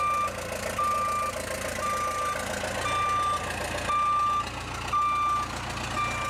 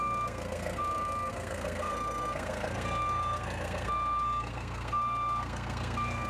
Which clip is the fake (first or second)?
second